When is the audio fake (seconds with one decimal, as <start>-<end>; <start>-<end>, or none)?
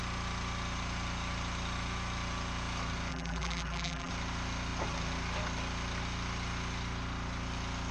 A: 3.1-4.1